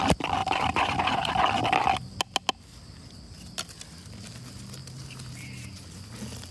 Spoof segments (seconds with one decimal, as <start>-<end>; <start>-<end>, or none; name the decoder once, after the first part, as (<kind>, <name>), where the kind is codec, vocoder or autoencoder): 0.4-1.0 (vocoder, BigVGAN v2); 4.8-5.7